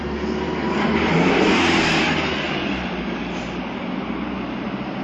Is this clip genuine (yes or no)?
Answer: yes